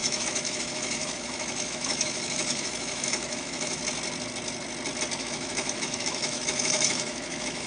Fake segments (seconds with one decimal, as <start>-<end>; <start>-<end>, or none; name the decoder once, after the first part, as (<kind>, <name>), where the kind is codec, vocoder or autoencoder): 0.0-3.8 (autoencoder, DAC-VAE); 5.2-7.7